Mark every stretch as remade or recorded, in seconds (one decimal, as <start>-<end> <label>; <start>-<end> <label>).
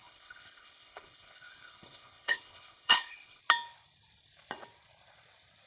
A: 0.0-3.4 remade; 3.4-5.7 recorded